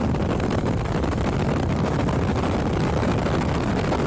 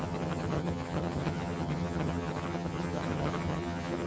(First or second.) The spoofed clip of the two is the second